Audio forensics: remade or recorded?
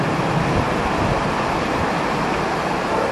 recorded